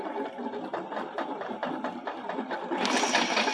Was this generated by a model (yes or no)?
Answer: no